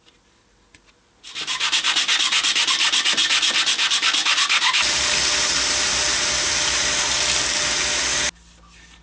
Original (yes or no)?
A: yes